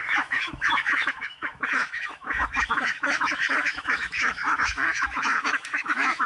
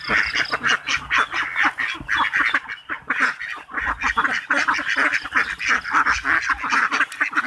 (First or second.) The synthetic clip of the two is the first